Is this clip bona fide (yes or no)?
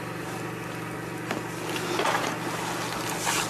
yes